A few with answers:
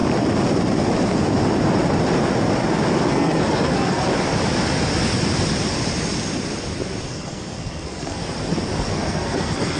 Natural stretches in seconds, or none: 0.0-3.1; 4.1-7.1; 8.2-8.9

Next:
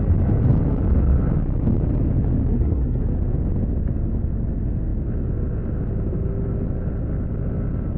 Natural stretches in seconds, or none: 0.0-2.5; 3.0-8.0

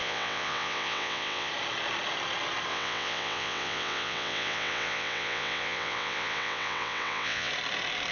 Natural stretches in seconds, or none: 1.5-2.7; 7.5-8.1

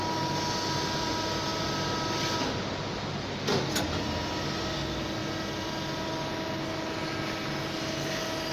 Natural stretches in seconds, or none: 0.0-8.5